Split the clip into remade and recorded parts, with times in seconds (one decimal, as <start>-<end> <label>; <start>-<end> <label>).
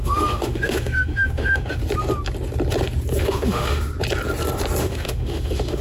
0.0-1.8 remade; 1.8-3.2 recorded; 3.2-3.9 remade; 3.9-4.8 recorded; 4.8-5.8 remade